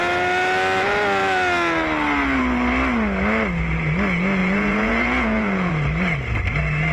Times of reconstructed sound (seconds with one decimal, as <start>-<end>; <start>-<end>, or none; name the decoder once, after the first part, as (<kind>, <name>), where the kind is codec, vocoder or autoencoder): 4.4-5.7 (vocoder, Vocos)